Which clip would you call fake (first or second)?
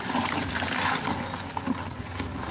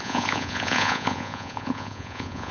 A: second